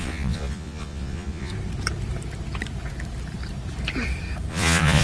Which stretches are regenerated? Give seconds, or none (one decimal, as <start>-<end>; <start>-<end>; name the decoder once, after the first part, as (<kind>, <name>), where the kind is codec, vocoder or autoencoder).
0.0-1.5 (vocoder, Vocos); 4.5-5.0